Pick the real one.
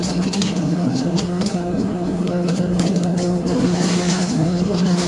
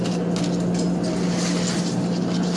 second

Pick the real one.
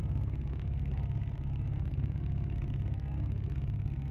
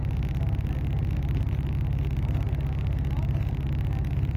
second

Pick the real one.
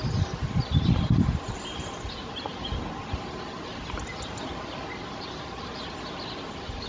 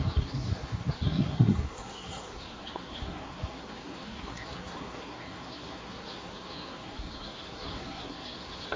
first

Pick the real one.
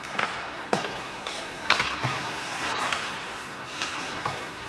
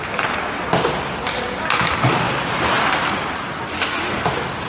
second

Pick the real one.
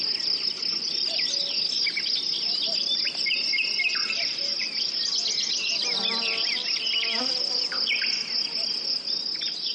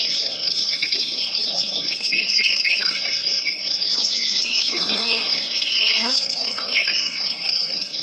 first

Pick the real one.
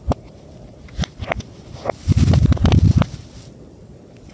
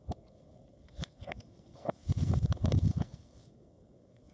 first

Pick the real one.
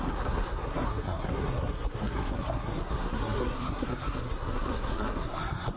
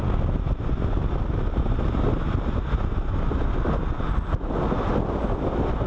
second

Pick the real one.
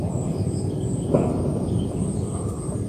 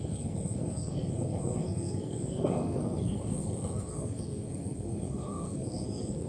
first